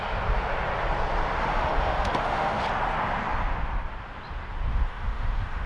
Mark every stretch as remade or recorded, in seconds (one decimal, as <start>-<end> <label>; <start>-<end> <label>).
0.0-1.4 recorded; 1.4-2.6 remade; 2.6-4.7 recorded; 4.7-5.7 remade